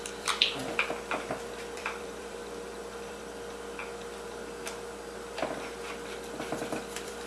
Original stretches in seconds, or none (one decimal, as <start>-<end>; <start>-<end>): 0.6-1.5; 2.4-3.0; 3.8-6.5